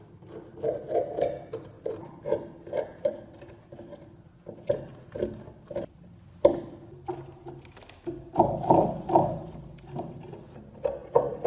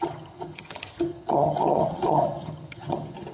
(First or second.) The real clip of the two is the first